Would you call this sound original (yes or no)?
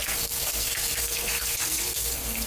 no